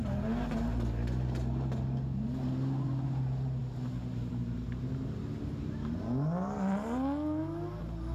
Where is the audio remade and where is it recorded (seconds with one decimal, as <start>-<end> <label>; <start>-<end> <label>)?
0.0-8.1 recorded